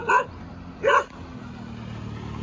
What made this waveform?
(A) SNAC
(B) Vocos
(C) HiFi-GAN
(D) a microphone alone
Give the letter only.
D